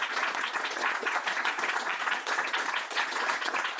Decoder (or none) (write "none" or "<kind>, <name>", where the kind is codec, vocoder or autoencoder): vocoder, Vocos